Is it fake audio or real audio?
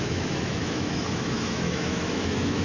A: fake